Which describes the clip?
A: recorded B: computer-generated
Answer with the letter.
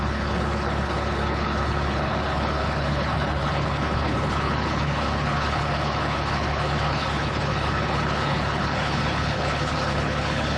B